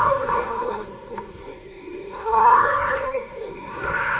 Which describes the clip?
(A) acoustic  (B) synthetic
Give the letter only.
B